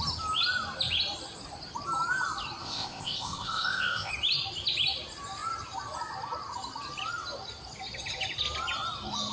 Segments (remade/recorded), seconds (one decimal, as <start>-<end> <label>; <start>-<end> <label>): 0.0-2.6 recorded; 2.6-4.1 remade; 4.1-9.3 recorded